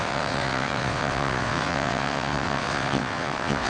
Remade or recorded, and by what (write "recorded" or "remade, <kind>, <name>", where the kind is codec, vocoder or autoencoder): remade, vocoder, WaveNeXt